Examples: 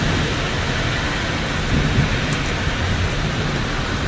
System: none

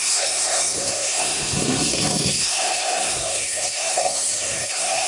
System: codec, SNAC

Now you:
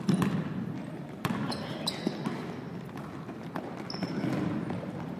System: none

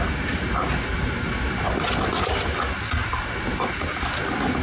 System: none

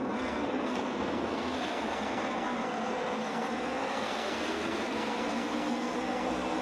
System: codec, SNAC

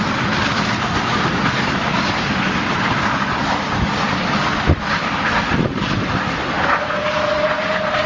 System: none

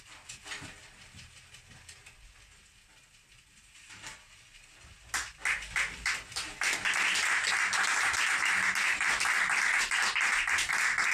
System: none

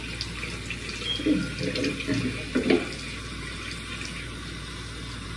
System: none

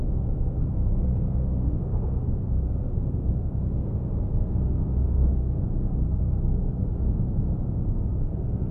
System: codec, SNAC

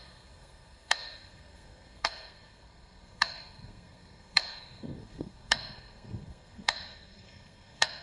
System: codec, SNAC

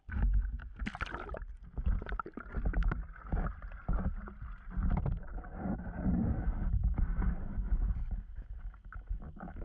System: none